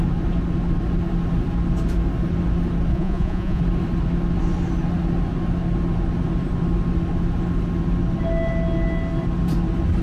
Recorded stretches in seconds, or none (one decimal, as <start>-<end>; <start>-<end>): 0.0-2.9; 3.6-10.0